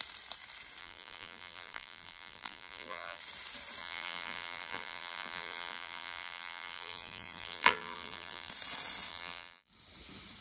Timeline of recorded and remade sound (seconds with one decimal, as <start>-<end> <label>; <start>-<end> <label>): 0.0-0.8 recorded; 0.8-3.2 remade; 3.2-3.8 recorded; 3.8-8.5 remade; 8.5-9.1 recorded; 9.1-9.7 remade; 9.7-10.4 recorded